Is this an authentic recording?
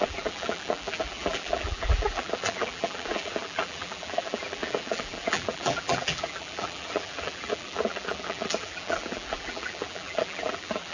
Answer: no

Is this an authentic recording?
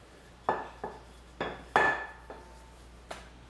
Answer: yes